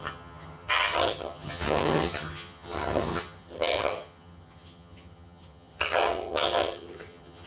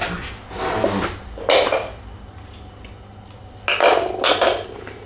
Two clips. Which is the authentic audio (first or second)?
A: second